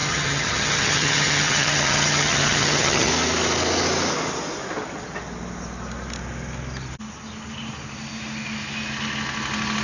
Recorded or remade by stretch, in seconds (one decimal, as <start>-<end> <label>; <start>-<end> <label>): 0.0-3.1 remade; 3.1-9.8 recorded